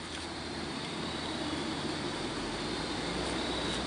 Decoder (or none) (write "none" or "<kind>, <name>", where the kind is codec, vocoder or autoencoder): vocoder, BigVGAN v2